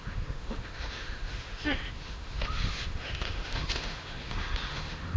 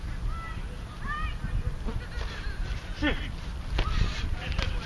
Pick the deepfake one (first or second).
first